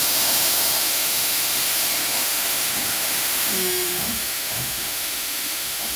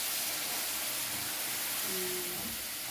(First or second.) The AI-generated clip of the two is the first